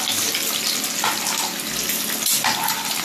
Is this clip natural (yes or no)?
yes